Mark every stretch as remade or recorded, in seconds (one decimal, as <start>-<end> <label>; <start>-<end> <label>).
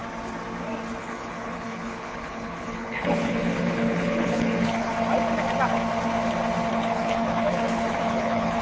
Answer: 0.0-1.0 recorded; 1.0-4.9 remade; 4.9-6.7 recorded; 6.7-8.6 remade